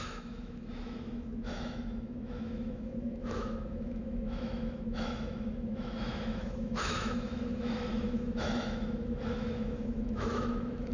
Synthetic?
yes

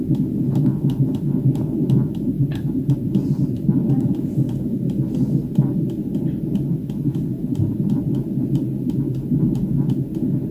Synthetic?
no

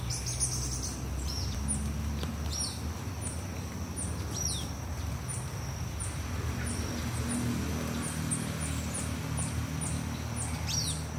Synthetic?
no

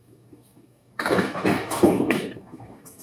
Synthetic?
yes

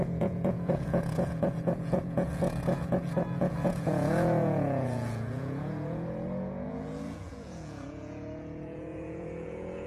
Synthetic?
yes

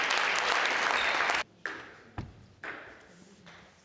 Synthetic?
no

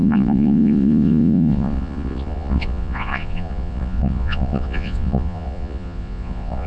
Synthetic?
yes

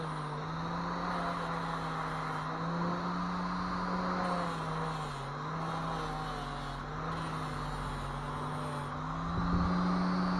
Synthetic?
no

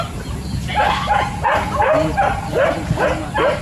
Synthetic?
no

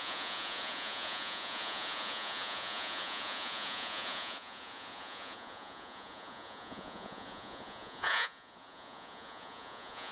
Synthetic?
yes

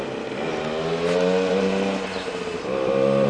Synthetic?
no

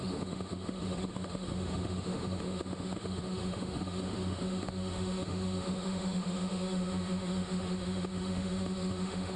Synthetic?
yes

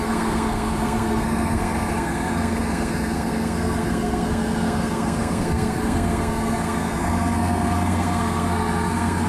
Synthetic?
yes